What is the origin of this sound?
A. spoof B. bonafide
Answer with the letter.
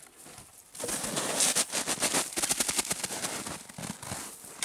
B